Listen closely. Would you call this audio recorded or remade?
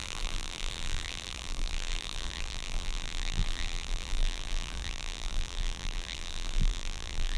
remade